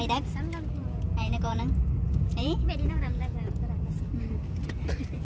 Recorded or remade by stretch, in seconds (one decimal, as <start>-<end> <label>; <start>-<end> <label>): 0.0-0.8 recorded; 0.8-3.9 remade; 3.9-5.2 recorded